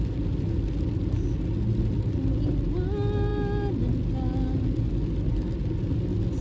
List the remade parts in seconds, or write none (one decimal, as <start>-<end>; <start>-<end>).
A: none